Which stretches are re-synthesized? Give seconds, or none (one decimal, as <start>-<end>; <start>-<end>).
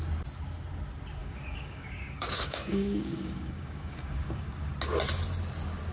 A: 1.2-4.7